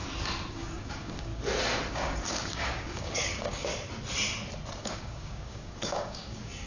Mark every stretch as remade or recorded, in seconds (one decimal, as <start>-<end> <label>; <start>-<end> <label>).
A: 0.0-0.5 recorded; 0.5-1.3 remade; 1.3-1.9 recorded; 1.9-3.7 remade; 3.7-4.8 recorded; 4.8-6.7 remade